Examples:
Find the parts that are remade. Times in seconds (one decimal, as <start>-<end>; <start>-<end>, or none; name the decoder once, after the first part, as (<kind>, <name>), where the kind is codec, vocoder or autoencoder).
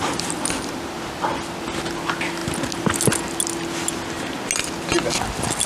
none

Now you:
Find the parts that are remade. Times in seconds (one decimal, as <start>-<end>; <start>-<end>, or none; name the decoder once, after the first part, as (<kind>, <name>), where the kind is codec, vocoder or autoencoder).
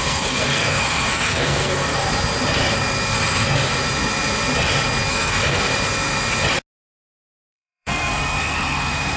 0.0-2.0 (codec, SNAC); 5.1-5.7; 7.2-9.2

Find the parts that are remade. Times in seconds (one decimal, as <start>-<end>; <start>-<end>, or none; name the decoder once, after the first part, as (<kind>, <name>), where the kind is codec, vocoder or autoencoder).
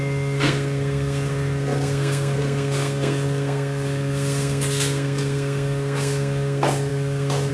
0.0-7.5 (codec, SNAC)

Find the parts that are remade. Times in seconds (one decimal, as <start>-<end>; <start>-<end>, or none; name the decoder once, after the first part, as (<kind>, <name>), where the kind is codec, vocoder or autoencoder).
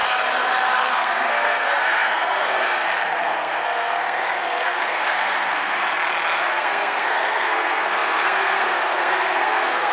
0.8-5.8 (codec, SNAC); 6.4-9.9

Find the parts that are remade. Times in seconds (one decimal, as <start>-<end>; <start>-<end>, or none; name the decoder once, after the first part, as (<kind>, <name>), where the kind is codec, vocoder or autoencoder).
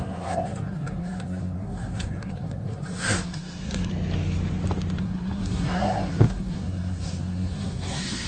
0.0-3.9 (codec, SNAC); 5.0-8.3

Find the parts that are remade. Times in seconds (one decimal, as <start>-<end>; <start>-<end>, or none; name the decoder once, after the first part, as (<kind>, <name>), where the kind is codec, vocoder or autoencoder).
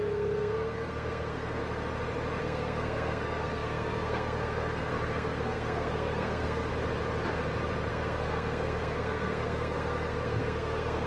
0.0-1.6 (codec, SNAC); 2.4-6.7; 7.9-11.1